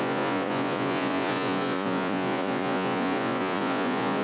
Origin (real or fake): fake